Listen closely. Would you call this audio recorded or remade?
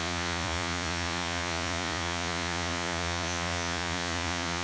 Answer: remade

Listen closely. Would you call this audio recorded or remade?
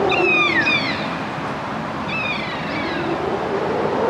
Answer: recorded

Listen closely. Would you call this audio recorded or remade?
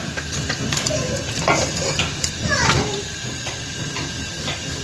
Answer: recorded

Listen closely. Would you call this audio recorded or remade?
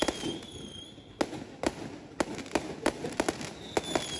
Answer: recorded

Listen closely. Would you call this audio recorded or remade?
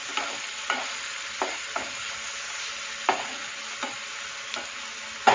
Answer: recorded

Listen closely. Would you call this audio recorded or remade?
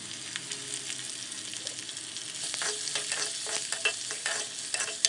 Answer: recorded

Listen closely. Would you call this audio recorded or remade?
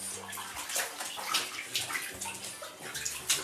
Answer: recorded